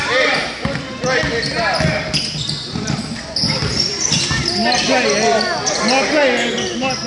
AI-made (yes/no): no